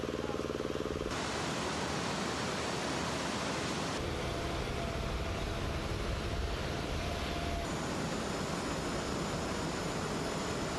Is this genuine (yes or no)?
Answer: yes